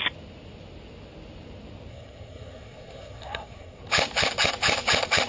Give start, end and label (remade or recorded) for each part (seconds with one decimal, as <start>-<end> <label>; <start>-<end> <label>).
0.0-1.9 recorded; 1.9-3.8 remade; 3.8-5.3 recorded